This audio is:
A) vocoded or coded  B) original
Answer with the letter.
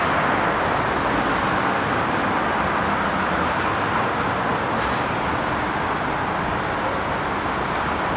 B